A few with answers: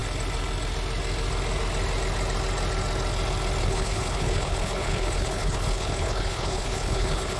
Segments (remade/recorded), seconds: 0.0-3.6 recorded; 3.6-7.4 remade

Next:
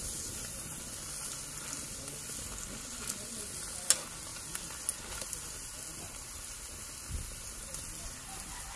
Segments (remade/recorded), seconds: 0.0-8.8 recorded

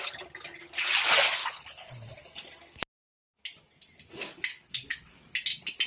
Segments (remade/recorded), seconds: 0.0-1.4 recorded; 1.4-2.1 remade; 2.1-4.5 recorded; 4.5-5.2 remade; 5.2-5.9 recorded

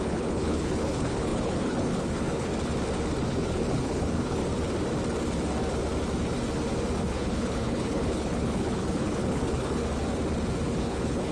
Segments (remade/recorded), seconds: 0.0-2.5 remade; 2.5-3.3 recorded; 3.3-4.4 remade; 4.4-7.0 recorded; 7.0-9.8 remade; 9.8-10.8 recorded; 10.8-11.3 remade

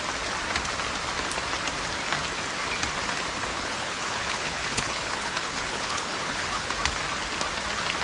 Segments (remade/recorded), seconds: 0.0-3.5 recorded; 3.5-6.7 remade; 6.7-8.0 recorded

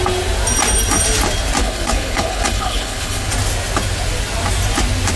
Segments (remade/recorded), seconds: 0.0-1.6 recorded; 1.6-3.3 remade; 3.3-5.2 recorded

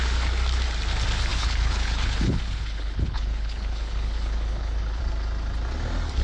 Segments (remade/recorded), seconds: 0.0-1.3 recorded; 1.3-5.0 remade; 5.0-6.2 recorded